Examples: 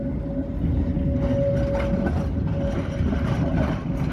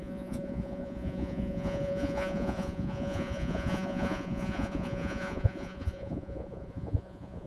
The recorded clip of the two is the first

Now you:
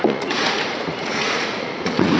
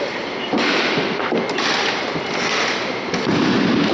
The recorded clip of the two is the second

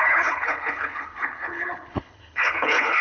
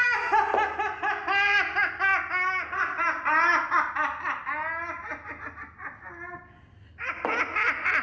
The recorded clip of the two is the second